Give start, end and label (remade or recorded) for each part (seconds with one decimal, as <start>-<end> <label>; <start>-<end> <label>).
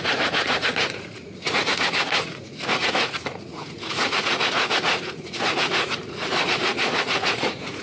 0.0-7.8 remade